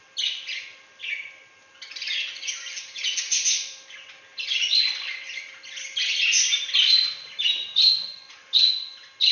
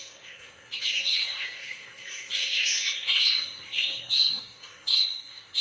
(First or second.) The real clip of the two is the first